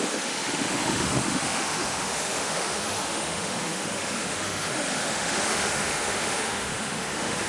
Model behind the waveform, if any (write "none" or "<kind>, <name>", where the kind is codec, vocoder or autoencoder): autoencoder, DAC-VAE